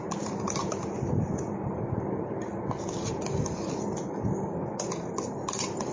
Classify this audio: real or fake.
real